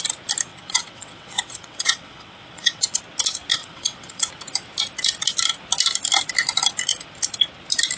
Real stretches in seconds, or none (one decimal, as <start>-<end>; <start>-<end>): 0.0-0.5; 3.0-3.6; 4.3-8.0